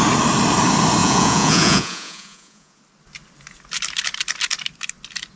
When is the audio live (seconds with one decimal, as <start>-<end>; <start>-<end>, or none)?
0.0-1.0; 2.8-5.4